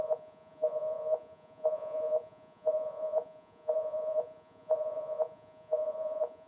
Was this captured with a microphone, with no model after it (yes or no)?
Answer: no